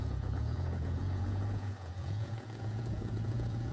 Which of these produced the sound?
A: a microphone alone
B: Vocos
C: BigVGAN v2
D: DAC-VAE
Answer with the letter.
B